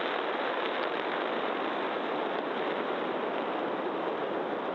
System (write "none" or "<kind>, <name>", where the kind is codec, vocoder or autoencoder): none